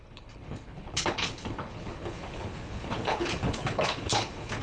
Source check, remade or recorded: remade